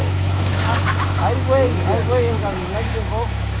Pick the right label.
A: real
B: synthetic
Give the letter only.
B